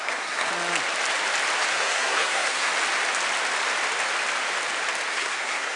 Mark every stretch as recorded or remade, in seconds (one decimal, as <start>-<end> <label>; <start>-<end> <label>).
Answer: 0.0-0.5 remade; 0.5-1.7 recorded; 1.7-2.7 remade; 2.7-5.1 recorded; 5.1-5.8 remade